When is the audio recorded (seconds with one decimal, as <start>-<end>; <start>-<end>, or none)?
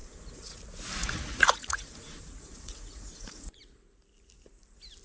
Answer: 0.6-1.0; 3.6-5.0